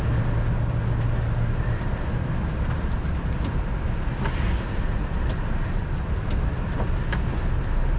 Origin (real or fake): real